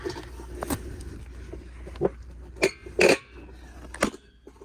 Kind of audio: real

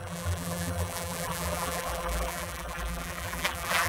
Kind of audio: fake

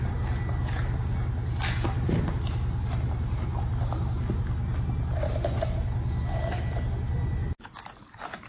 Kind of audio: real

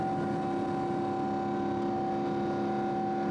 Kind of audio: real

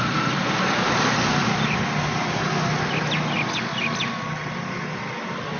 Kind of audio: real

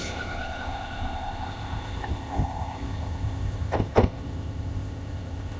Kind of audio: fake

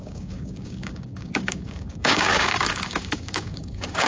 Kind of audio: fake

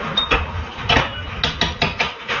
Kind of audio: real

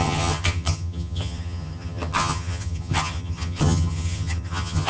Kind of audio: fake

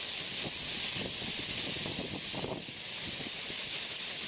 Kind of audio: real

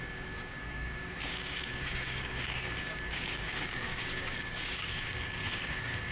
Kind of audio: fake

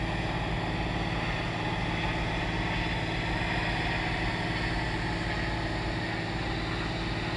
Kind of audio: real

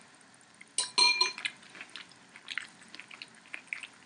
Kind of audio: real